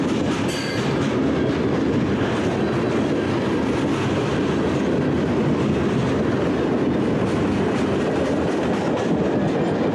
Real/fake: real